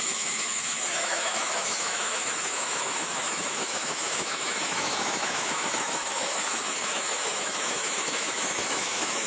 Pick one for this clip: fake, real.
fake